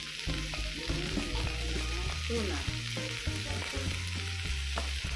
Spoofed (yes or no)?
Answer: no